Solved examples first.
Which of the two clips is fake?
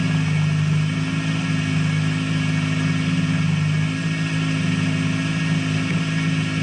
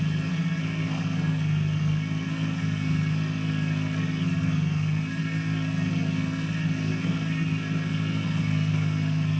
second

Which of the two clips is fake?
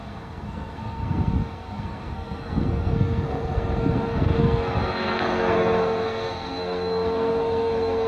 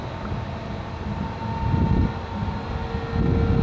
first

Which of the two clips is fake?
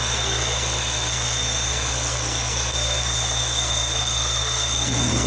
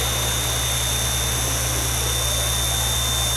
first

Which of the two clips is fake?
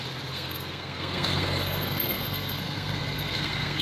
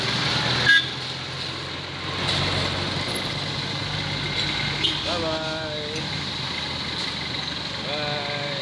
first